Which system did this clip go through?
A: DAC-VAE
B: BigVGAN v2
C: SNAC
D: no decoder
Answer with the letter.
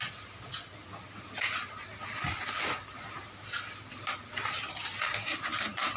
D